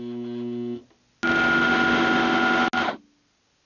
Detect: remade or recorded recorded